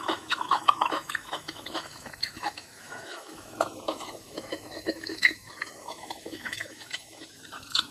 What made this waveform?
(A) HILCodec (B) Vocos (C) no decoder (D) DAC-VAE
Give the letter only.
D